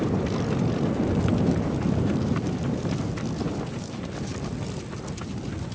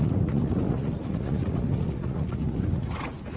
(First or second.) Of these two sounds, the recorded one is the first